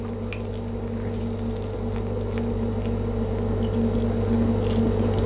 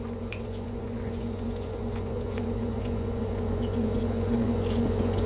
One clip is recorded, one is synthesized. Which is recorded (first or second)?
first